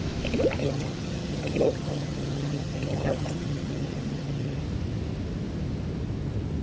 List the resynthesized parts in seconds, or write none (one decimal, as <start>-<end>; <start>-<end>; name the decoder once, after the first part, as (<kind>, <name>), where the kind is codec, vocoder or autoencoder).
0.6-4.6 (vocoder, HiFi-GAN)